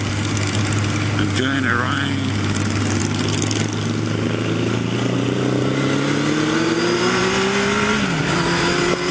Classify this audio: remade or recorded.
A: recorded